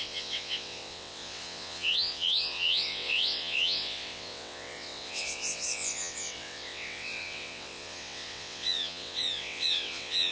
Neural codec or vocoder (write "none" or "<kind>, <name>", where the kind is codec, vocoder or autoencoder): vocoder, WaveNeXt